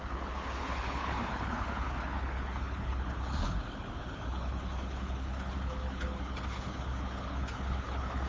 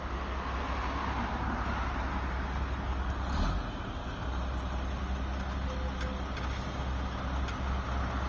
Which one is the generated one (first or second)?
first